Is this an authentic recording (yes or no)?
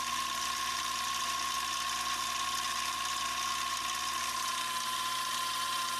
yes